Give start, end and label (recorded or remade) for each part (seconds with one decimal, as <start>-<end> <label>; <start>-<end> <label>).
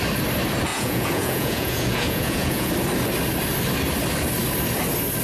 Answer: 0.0-0.7 recorded; 0.7-2.7 remade; 2.7-5.2 recorded